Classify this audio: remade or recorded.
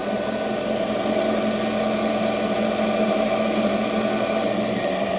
recorded